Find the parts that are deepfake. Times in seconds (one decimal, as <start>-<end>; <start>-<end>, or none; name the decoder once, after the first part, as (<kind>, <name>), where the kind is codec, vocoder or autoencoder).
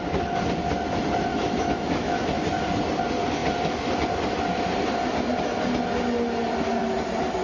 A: 1.3-2.5 (autoencoder, DAC-VAE)